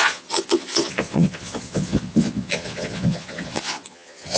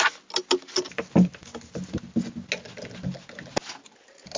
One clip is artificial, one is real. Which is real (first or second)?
second